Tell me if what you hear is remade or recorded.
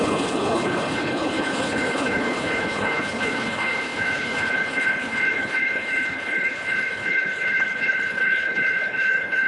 remade